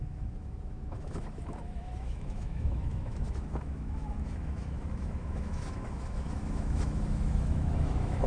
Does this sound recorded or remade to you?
remade